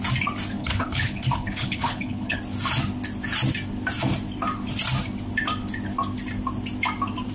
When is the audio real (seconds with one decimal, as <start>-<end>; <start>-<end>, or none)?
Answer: 0.0-0.6; 2.4-7.3